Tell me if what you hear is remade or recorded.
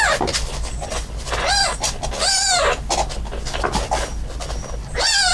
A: recorded